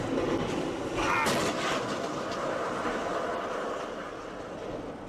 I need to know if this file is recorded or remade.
recorded